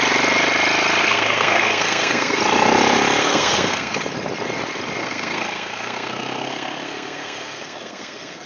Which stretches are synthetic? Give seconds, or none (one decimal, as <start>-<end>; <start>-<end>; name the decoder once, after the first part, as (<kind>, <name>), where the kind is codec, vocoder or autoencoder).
1.0-2.4 (codec, SNAC); 3.2-3.9; 5.0-8.5

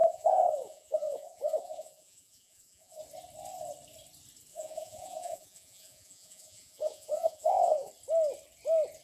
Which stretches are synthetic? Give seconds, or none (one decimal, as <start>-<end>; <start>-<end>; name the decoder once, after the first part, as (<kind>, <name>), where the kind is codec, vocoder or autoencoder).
0.0-3.0 (vocoder, Vocos); 4.5-7.9

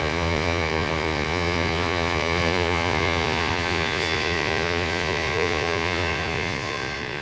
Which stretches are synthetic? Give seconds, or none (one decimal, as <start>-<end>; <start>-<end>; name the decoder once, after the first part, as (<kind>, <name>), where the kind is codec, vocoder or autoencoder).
0.0-7.2 (vocoder, Vocos)